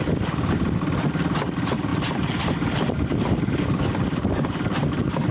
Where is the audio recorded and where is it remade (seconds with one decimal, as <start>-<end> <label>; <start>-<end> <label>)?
0.0-5.3 recorded